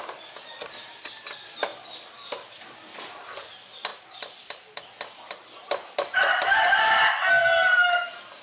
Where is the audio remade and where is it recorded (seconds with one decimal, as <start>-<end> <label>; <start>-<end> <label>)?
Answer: 0.0-3.9 recorded; 3.9-4.8 remade; 4.8-7.4 recorded; 7.4-8.4 remade